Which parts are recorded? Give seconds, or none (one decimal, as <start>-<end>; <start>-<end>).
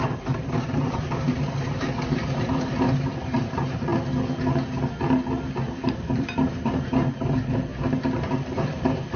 3.9-5.9; 7.7-8.3